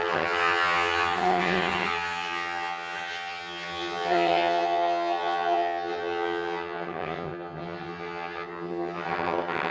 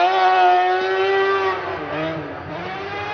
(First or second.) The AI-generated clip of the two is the first